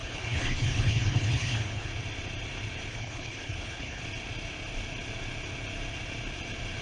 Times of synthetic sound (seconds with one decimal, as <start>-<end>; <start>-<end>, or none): 0.0-1.9; 2.9-4.0